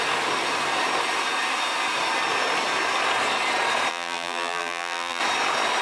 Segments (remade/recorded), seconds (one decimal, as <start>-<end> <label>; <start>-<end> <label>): 0.0-3.9 recorded; 3.9-5.2 remade; 5.2-5.8 recorded